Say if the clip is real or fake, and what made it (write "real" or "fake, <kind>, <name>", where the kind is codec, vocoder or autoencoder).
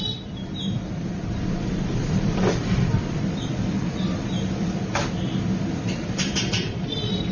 fake, vocoder, BigVGAN v2